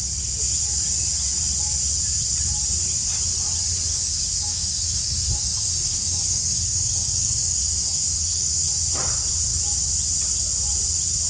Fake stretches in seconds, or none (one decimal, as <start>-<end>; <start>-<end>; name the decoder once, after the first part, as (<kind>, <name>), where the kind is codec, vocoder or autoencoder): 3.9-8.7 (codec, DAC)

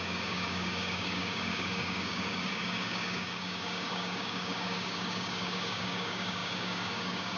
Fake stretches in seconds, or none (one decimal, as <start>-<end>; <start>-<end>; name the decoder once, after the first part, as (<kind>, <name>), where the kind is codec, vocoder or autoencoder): 0.0-7.4 (codec, DAC)

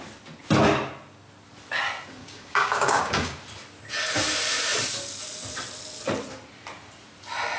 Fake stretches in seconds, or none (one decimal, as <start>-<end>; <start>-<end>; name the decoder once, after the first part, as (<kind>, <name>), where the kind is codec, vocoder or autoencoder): 2.2-3.4 (codec, DAC)

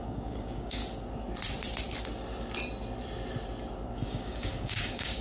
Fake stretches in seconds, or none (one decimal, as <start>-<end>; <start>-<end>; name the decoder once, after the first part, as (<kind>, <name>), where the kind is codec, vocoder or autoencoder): 0.0-0.8 (codec, DAC); 3.9-5.2